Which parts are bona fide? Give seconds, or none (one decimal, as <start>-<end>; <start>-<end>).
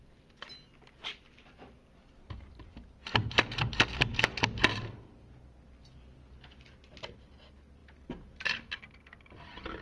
0.0-9.8